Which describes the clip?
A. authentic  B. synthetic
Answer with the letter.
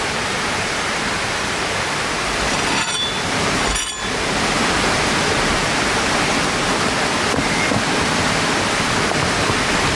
B